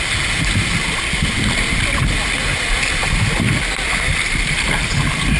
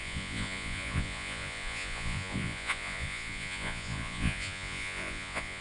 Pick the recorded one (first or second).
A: first